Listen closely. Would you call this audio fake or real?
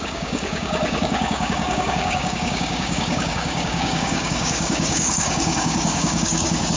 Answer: fake